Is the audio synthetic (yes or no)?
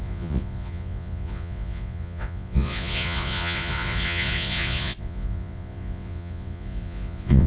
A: yes